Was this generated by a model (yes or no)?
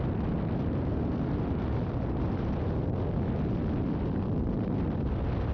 no